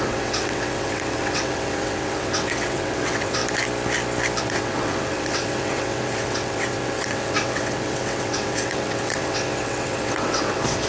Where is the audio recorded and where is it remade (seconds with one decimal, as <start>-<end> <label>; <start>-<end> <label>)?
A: 0.0-3.4 remade; 3.4-4.4 recorded; 4.4-10.9 remade